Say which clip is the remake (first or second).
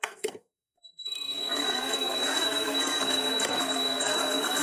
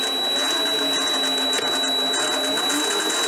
first